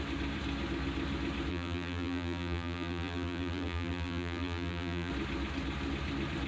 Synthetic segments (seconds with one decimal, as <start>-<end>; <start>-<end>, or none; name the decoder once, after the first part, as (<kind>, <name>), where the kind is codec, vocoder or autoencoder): 1.5-5.1 (vocoder, BigVGAN v2)